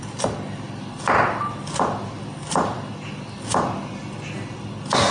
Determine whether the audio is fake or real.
real